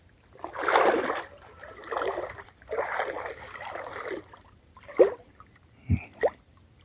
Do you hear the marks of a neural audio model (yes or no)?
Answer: yes